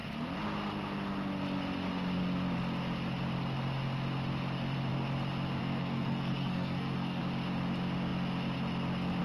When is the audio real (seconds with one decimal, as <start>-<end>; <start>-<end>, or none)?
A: 0.0-5.6; 7.2-9.2